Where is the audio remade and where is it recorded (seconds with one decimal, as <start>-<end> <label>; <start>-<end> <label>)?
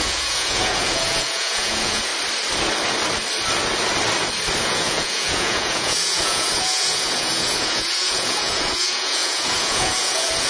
0.0-2.1 remade; 2.1-4.6 recorded; 4.6-10.5 remade